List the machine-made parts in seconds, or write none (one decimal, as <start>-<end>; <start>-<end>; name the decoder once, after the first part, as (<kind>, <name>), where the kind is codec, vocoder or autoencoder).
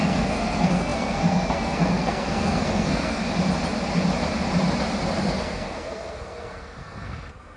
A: 0.0-3.2 (codec, SNAC); 5.4-7.6